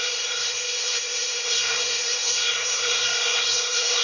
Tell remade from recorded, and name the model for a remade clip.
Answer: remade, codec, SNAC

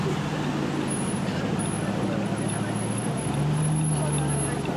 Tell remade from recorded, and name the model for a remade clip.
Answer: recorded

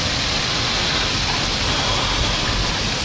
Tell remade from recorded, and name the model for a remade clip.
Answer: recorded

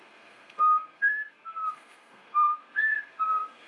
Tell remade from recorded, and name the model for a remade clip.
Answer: remade, codec, SNAC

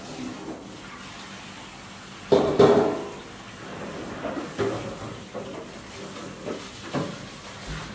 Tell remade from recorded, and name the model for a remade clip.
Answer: recorded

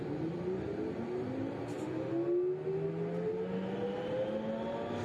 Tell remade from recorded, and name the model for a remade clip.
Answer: recorded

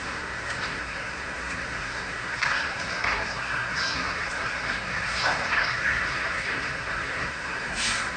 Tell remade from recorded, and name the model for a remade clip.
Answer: remade, codec, SNAC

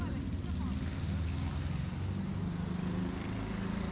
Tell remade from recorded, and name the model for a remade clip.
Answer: recorded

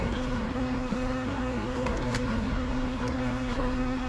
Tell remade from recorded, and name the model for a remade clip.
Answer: remade, codec, SNAC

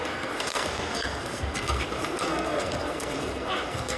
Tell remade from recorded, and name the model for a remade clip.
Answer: remade, codec, SNAC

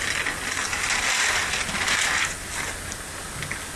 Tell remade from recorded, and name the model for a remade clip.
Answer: recorded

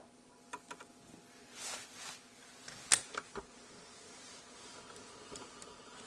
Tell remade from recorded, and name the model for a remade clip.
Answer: recorded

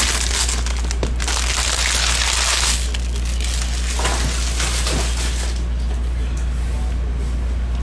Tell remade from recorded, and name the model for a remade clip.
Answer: recorded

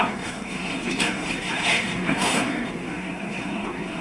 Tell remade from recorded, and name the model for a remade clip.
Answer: remade, codec, SNAC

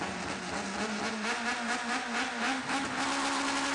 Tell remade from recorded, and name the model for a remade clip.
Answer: recorded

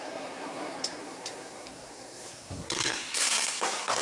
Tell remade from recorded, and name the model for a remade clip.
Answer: remade, codec, SNAC